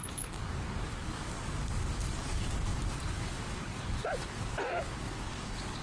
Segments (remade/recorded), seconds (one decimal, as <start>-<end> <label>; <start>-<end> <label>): 0.0-5.8 remade